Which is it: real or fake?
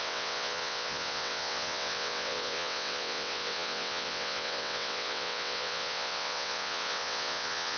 fake